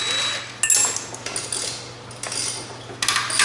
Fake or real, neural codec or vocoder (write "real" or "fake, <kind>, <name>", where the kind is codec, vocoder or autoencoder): real